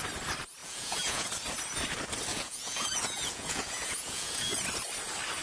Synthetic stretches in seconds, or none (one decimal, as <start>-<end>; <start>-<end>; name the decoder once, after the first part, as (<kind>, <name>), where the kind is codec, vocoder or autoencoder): 0.6-1.3 (vocoder, Vocos); 2.3-4.6